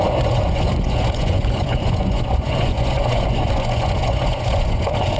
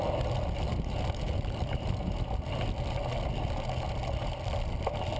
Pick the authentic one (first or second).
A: second